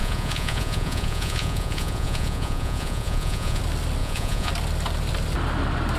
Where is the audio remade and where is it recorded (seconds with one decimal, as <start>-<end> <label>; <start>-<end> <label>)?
0.0-3.6 remade; 3.6-4.0 recorded; 4.0-4.5 remade; 4.5-6.0 recorded